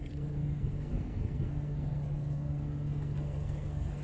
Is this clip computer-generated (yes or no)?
yes